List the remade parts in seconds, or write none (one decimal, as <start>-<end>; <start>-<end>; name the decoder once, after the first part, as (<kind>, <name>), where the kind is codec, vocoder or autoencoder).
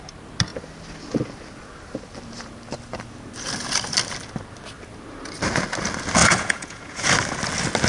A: 6.2-7.1 (vocoder, Vocos)